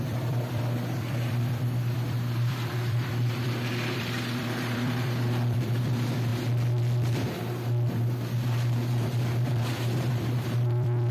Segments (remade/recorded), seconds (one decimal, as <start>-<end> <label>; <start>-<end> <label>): 0.0-6.3 remade; 6.3-10.1 recorded; 10.1-11.1 remade